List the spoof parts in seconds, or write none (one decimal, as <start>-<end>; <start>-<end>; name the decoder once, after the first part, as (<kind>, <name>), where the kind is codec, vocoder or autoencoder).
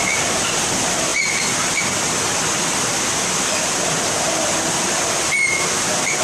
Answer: none